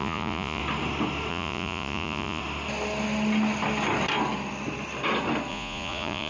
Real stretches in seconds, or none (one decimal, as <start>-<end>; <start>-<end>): 0.6-1.3; 2.4-5.5